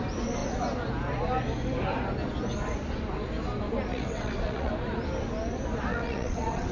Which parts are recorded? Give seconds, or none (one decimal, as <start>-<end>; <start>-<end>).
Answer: 0.0-3.9; 4.7-5.9